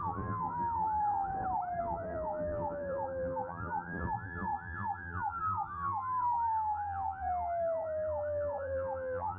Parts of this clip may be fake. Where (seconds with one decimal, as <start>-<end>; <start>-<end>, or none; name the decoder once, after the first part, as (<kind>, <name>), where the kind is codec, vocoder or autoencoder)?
0.0-1.3 (vocoder, BigVGAN v2); 1.8-9.4